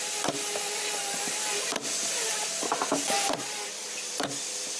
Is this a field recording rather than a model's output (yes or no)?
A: yes